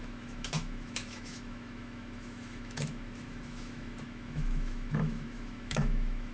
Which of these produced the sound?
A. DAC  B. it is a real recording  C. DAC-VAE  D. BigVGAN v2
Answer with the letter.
C